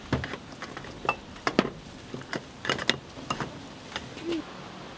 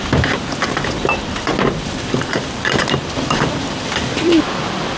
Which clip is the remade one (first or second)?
second